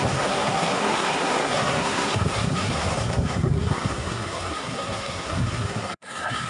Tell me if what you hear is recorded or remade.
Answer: remade